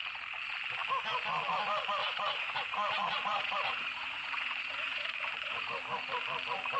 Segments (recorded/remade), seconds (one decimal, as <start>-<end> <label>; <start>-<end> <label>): 0.0-2.0 recorded; 2.0-5.6 remade; 5.6-6.8 recorded